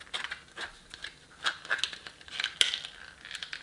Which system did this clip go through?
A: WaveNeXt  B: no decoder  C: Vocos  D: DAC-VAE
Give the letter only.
B